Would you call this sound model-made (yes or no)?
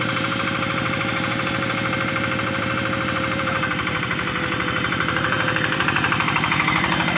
yes